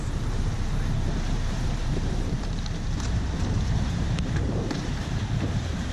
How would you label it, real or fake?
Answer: fake